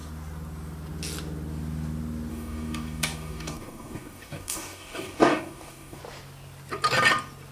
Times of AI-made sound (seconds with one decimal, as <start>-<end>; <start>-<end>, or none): 2.3-6.0